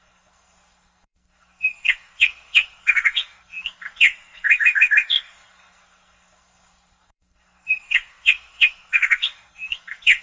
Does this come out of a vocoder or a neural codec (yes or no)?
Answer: yes